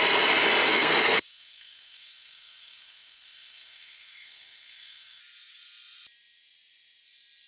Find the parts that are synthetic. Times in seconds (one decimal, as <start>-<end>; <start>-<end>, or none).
0.7-5.2